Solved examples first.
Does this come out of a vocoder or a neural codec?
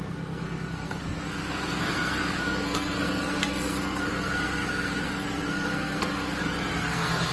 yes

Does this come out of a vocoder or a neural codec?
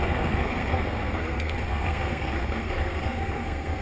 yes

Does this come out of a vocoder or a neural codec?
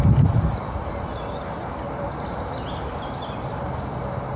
no